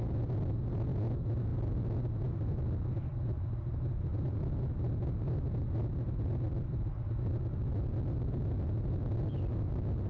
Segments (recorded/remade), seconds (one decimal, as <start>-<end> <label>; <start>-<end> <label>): 0.0-10.1 recorded